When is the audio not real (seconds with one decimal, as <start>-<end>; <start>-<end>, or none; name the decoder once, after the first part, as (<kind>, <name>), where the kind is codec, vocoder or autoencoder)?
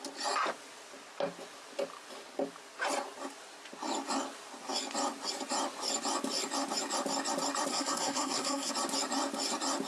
7.7-8.7 (codec, SNAC)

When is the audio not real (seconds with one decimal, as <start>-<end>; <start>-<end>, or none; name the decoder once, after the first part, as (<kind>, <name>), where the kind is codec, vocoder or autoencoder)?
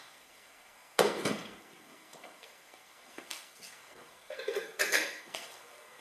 0.0-6.0 (codec, SNAC)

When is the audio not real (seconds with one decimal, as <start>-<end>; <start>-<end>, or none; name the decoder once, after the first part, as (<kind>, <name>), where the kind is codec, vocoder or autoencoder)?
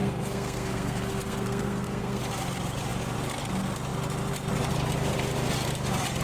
0.0-2.2 (codec, SNAC)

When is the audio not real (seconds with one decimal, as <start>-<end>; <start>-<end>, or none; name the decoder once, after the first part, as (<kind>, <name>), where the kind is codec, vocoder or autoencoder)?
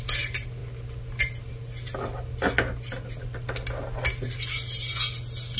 none